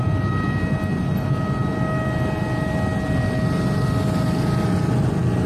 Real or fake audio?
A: real